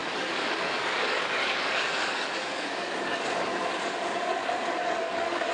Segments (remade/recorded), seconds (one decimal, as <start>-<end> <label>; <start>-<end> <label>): 0.0-5.5 remade